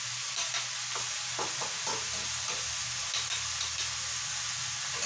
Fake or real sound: real